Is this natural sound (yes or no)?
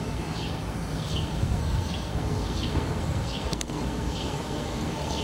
no